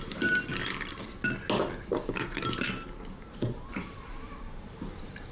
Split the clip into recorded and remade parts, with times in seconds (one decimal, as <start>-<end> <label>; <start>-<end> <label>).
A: 0.0-0.5 remade; 0.5-1.8 recorded; 1.8-5.3 remade